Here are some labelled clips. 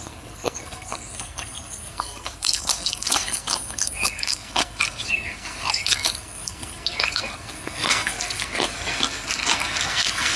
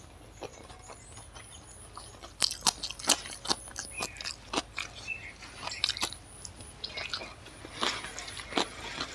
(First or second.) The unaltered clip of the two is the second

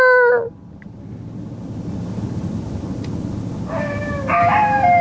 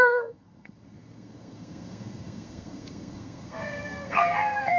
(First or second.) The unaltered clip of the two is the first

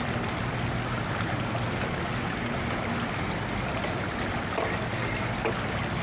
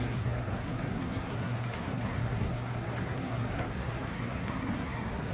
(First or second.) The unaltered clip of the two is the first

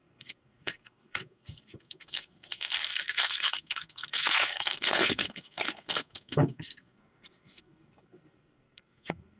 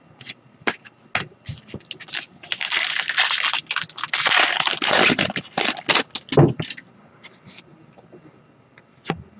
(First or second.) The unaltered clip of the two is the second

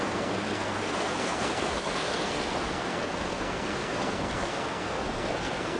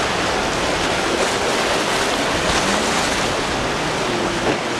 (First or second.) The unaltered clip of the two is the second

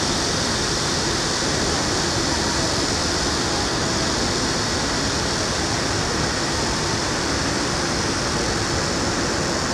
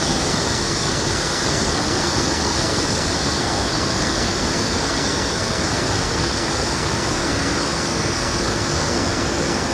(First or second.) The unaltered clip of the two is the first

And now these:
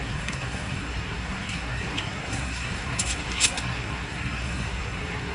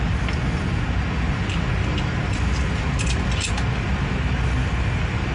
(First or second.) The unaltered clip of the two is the second